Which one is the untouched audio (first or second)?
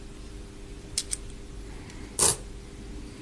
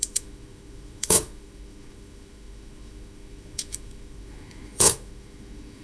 first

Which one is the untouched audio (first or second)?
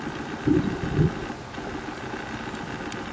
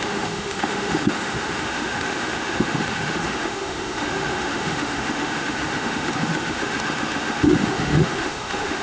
first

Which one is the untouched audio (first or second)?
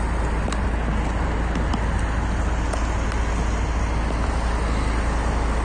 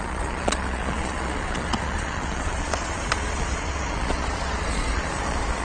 first